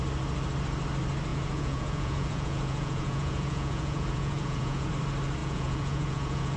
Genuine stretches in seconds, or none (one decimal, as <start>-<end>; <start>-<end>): 0.0-1.3; 4.9-5.4

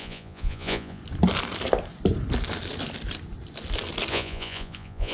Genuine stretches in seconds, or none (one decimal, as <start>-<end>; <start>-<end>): 1.0-4.1

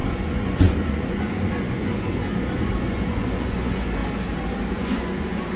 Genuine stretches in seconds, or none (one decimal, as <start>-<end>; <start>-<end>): 4.0-4.7

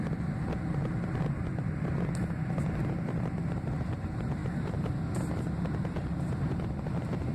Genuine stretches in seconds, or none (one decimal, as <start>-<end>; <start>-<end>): 0.0-7.3